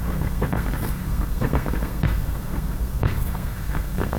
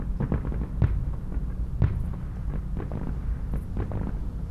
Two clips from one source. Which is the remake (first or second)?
first